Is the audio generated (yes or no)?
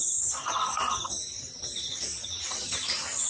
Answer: no